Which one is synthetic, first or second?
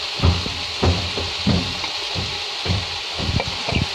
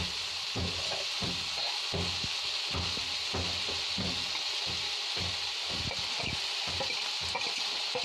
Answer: first